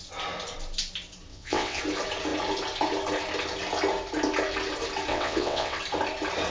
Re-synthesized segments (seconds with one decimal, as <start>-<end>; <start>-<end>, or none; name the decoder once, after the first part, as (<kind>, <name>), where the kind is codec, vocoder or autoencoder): 1.3-1.8 (vocoder, WaveNeXt); 5.1-5.8